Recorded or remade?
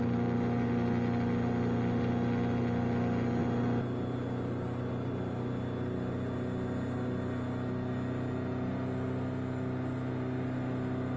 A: recorded